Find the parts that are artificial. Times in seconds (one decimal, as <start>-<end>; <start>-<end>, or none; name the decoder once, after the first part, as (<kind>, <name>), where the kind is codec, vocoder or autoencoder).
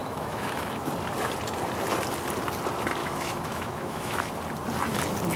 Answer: 0.0-0.9 (autoencoder, DAC-VAE); 3.0-4.3